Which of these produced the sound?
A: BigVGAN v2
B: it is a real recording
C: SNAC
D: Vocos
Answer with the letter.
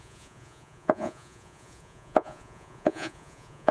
D